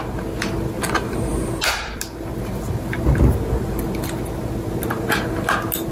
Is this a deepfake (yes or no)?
no